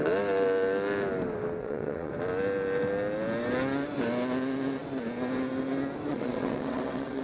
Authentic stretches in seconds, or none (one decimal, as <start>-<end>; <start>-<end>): 0.0-1.6; 2.1-6.1